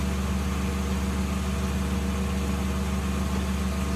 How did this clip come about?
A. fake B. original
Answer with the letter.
B